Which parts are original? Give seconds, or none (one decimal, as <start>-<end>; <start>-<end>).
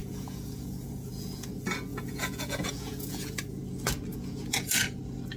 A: 1.5-1.9; 3.6-4.1; 5.0-5.4